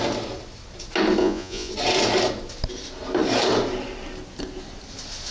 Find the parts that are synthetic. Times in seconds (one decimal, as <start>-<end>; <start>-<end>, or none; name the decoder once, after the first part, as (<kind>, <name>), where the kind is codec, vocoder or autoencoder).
1.2-1.7 (vocoder, Vocos)